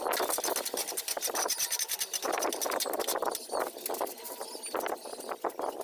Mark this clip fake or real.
real